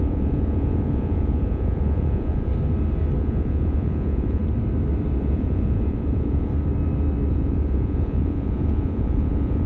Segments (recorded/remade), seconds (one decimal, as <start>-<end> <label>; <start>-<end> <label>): 0.0-2.5 remade; 2.5-3.2 recorded; 3.2-4.4 remade; 4.4-5.2 recorded; 5.2-6.5 remade; 6.5-7.3 recorded; 7.3-9.7 remade